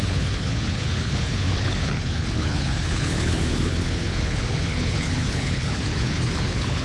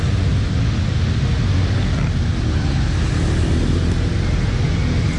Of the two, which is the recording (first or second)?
second